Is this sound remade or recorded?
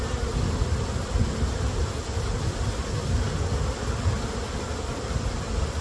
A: recorded